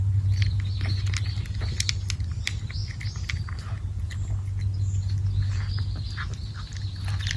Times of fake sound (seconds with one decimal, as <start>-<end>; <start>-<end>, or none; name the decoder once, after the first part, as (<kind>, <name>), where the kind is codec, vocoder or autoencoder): none